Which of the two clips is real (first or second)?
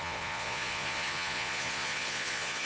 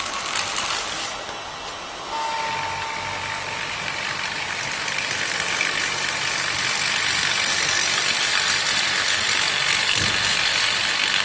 second